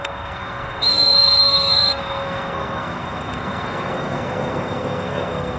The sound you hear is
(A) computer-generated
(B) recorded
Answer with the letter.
A